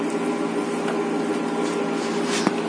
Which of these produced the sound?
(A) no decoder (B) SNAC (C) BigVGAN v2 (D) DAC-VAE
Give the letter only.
A